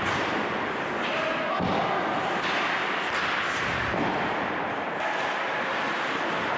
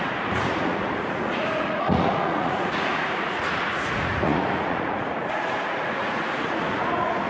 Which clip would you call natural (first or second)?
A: first